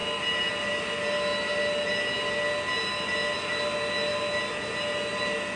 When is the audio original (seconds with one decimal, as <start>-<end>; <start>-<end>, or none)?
0.0-5.6